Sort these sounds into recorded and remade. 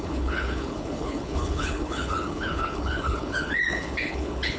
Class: remade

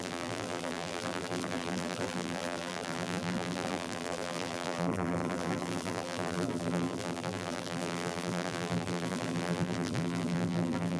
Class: remade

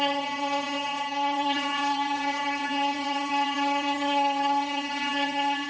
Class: remade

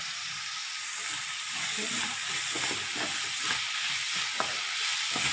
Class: recorded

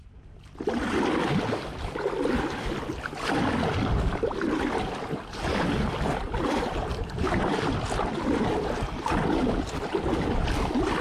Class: recorded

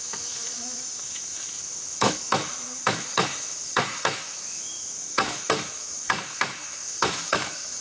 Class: remade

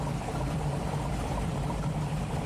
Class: remade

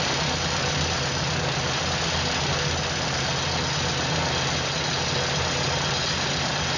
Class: recorded